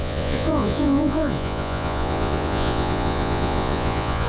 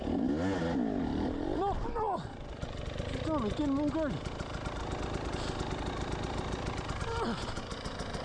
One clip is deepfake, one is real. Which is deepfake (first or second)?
first